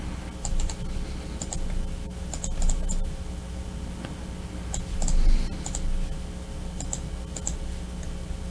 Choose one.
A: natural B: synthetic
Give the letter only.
A